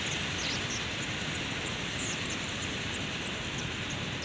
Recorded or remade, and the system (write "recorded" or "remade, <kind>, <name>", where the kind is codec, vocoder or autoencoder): recorded